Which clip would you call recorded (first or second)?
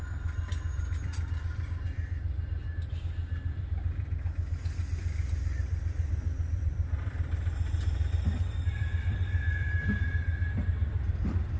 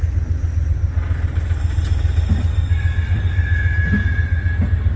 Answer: second